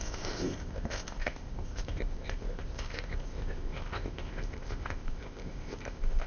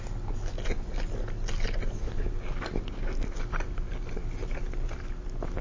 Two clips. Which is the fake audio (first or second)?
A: first